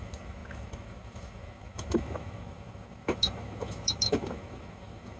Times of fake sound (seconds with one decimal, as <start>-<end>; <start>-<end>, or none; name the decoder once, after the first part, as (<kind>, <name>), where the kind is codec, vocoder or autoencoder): 0.0-5.2 (autoencoder, DAC-VAE)